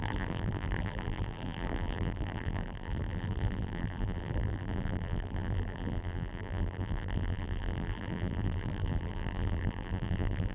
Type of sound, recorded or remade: remade